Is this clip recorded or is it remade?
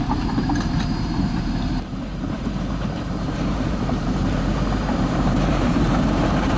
remade